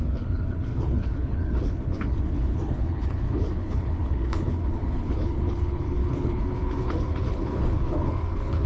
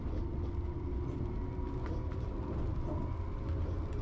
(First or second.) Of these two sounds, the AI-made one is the first